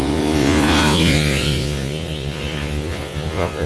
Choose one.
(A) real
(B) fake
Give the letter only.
B